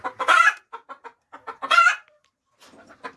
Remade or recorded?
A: recorded